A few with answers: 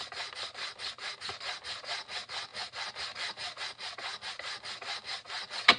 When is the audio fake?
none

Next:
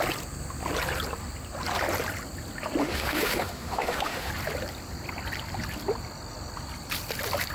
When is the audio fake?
2.8-4.3 (autoencoder, DAC-VAE)

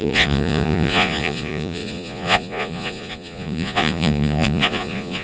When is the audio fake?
0.0-5.2 (vocoder, Vocos)

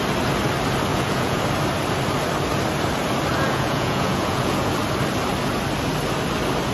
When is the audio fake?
0.9-1.4 (vocoder, Vocos); 3.3-4.7

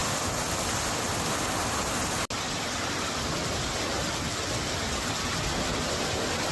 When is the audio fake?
none